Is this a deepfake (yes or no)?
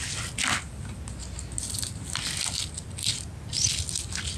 no